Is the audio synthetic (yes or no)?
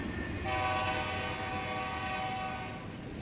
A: no